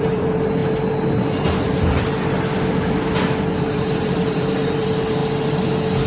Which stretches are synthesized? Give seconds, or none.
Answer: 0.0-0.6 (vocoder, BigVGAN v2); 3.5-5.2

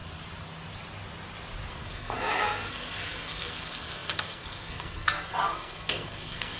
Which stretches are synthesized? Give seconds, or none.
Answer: 1.7-6.6 (codec, SNAC)

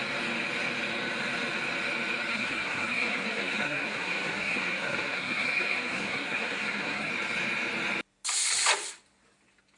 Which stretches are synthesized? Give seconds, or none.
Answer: 2.3-7.1 (codec, SNAC)

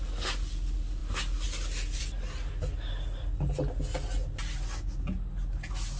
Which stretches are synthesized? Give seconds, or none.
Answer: none

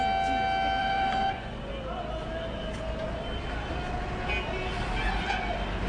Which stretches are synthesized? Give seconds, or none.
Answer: 0.8-1.7 (vocoder, Vocos)

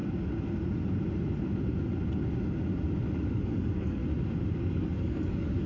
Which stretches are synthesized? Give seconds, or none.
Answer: 3.3-4.0 (codec, DAC); 4.6-5.7

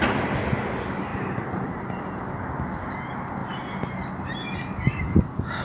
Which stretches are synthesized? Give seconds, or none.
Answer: 1.1-1.9 (vocoder, BigVGAN v2)

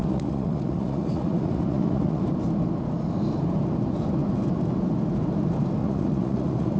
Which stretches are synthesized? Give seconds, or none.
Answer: 0.0-2.2 (vocoder, Vocos); 5.8-6.8